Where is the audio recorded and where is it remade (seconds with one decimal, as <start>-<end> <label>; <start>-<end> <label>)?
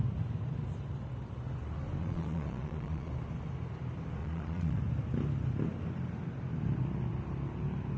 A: 0.0-2.0 recorded; 2.0-3.1 remade; 3.1-4.2 recorded; 4.2-4.8 remade; 4.8-8.0 recorded